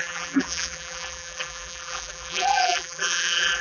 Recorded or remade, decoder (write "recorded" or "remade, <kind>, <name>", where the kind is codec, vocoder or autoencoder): remade, vocoder, BigVGAN v2